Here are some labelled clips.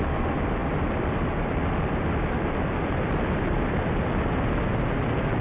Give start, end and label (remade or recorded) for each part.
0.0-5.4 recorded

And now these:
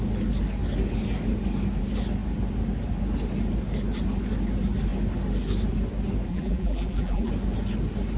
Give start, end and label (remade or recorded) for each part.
0.0-6.3 recorded; 6.3-7.3 remade; 7.3-8.2 recorded

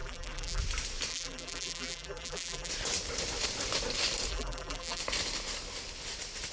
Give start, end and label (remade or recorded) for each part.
0.0-0.6 remade; 0.6-1.1 recorded; 1.1-2.7 remade; 2.7-4.3 recorded; 4.3-5.0 remade; 5.0-6.5 recorded

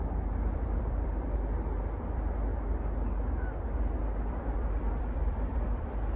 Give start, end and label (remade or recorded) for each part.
0.0-2.5 remade; 2.5-4.0 recorded; 4.0-6.2 remade

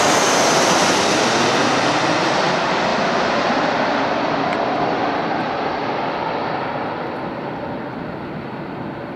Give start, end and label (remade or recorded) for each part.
0.0-9.2 recorded